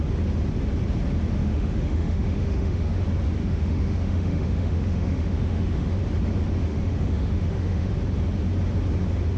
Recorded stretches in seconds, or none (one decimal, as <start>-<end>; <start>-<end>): 0.0-1.4; 3.0-3.4; 6.0-6.7; 7.9-9.4